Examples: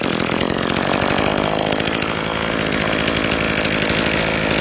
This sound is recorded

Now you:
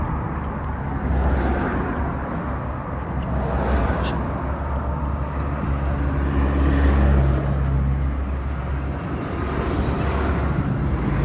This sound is recorded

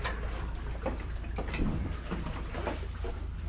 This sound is recorded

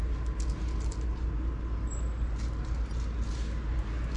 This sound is recorded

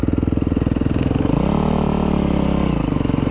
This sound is recorded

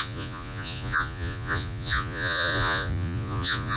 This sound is remade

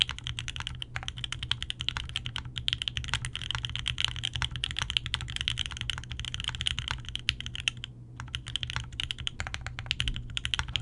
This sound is recorded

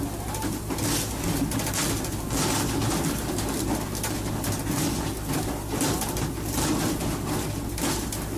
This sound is recorded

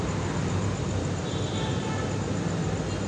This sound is recorded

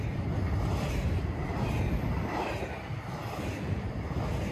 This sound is recorded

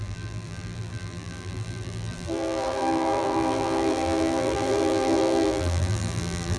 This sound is remade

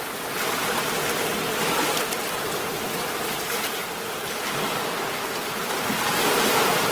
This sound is remade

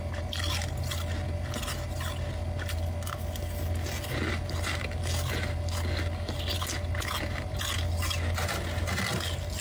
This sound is recorded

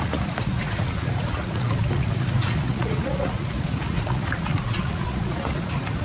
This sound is remade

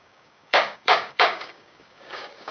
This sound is remade